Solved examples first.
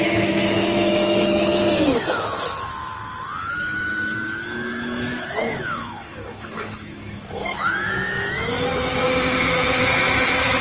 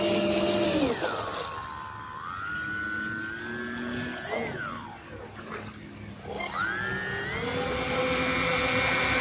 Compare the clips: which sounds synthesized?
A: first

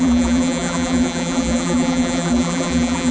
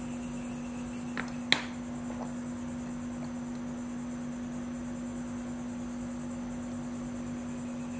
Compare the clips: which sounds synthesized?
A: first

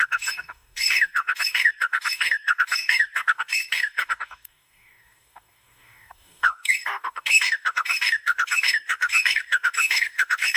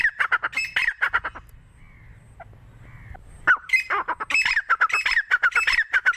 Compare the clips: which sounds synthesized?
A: first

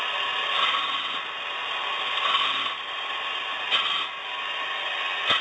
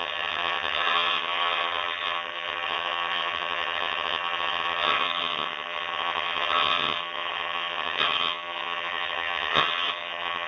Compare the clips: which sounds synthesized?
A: second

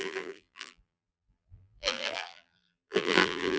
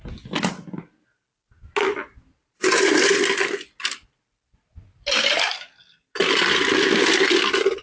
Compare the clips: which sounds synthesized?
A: first